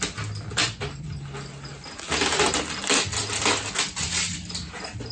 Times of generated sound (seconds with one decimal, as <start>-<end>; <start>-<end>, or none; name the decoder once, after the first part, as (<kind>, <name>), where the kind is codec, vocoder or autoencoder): none